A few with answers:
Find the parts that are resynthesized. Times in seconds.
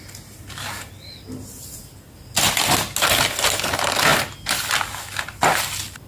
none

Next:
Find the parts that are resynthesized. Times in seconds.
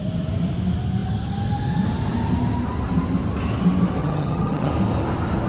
4.0-4.7 (vocoder, HiFi-GAN)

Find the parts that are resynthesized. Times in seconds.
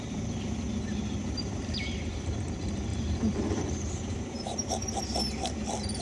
2.9-5.0 (vocoder, BigVGAN v2)